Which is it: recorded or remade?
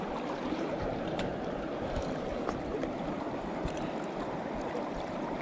remade